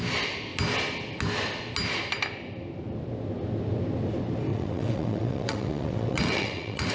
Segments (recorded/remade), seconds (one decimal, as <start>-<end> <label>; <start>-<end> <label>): 0.0-4.5 recorded; 4.5-6.9 remade